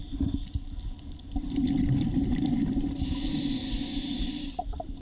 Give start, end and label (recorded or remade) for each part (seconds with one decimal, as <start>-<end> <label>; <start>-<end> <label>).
0.0-5.0 recorded